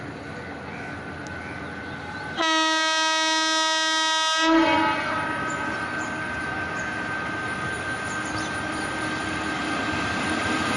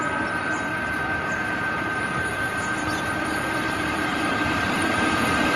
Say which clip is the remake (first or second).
second